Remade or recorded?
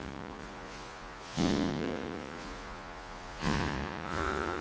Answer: remade